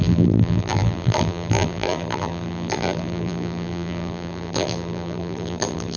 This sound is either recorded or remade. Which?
remade